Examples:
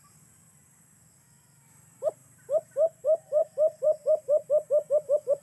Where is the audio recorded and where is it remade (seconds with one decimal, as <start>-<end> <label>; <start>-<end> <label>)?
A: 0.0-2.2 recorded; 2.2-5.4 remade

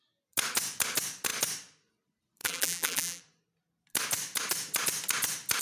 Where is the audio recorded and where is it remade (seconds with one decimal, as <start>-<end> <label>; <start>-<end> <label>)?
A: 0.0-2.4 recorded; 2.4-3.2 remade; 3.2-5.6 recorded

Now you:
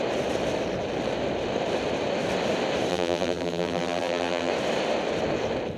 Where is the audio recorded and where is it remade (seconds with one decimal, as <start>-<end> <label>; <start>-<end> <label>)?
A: 0.0-2.9 recorded; 2.9-4.5 remade; 4.5-5.8 recorded

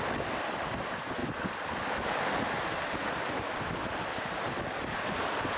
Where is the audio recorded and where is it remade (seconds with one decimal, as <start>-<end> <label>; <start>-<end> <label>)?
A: 0.0-5.6 recorded

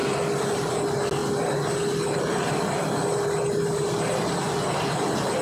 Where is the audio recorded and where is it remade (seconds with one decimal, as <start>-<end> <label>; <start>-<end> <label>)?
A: 0.0-5.4 recorded